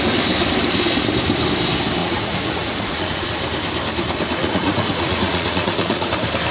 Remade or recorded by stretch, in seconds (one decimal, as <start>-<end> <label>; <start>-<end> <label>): 0.0-2.0 recorded; 2.0-3.3 remade; 3.3-4.4 recorded; 4.4-6.1 remade; 6.1-6.5 recorded